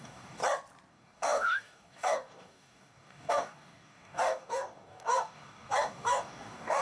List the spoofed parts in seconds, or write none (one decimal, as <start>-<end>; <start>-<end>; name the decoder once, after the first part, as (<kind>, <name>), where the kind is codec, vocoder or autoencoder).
0.0-0.4 (codec, DAC); 0.9-6.8